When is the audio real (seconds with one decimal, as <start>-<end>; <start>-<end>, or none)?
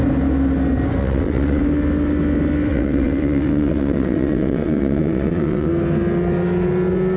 0.0-1.0; 1.6-2.7; 5.7-7.2